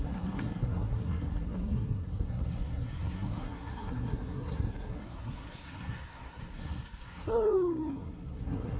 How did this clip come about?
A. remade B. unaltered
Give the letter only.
A